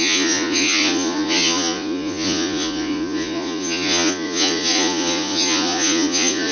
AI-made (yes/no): yes